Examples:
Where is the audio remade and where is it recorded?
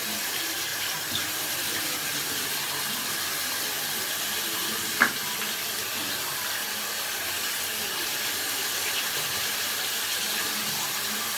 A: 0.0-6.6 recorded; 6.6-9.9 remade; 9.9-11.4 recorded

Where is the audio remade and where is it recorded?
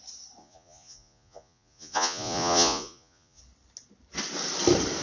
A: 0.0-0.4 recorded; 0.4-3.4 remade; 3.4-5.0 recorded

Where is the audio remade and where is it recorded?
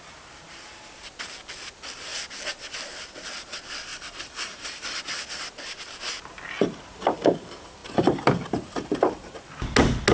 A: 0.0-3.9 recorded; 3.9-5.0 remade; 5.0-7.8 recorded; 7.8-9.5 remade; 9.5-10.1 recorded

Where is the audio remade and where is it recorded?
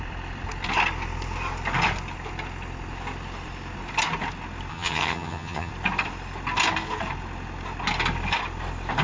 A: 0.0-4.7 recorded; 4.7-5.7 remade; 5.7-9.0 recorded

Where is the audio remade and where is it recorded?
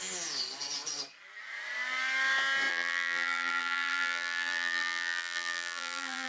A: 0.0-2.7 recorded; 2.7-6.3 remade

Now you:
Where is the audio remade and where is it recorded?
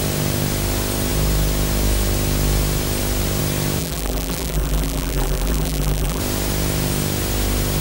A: 0.0-3.8 recorded; 3.8-6.2 remade; 6.2-7.8 recorded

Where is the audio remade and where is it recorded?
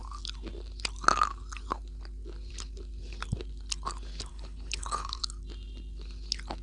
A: 0.0-4.3 recorded; 4.3-5.2 remade; 5.2-6.6 recorded